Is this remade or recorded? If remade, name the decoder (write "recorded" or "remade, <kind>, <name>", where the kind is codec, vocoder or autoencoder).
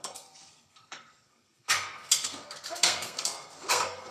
remade, codec, SNAC